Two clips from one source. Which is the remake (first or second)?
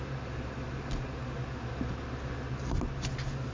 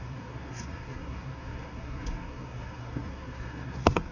second